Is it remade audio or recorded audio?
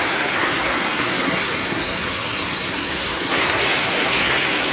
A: remade